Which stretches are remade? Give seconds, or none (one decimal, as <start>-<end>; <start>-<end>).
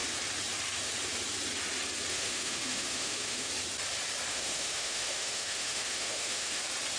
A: 2.1-3.5; 4.3-6.6